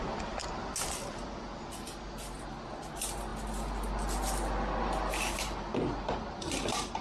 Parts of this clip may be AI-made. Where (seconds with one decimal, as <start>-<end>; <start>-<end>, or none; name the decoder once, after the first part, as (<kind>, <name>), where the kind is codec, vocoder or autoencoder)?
none